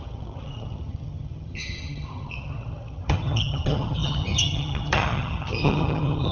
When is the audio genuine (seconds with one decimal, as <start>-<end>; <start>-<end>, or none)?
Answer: none